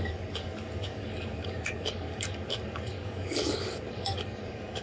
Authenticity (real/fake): fake